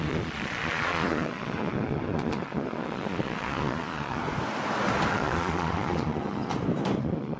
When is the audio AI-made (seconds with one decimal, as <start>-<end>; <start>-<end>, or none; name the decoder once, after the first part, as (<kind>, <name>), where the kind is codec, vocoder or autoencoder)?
0.0-4.2 (vocoder, Vocos); 5.1-6.5; 7.0-7.4